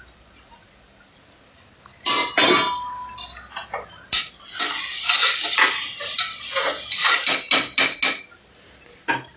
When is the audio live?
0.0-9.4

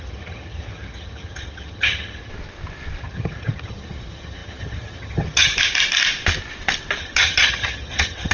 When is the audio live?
2.3-3.0; 5.5-7.0

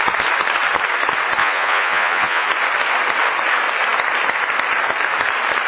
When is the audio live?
0.0-1.4; 2.5-5.7

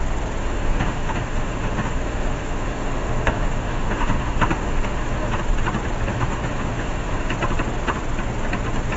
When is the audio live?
0.0-0.4; 5.4-6.1; 7.3-9.0

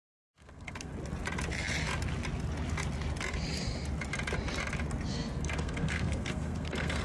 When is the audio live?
0.9-5.1